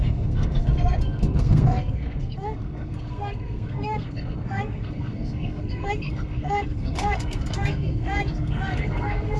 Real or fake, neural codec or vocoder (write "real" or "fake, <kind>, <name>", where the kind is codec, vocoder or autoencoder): fake, codec, SNAC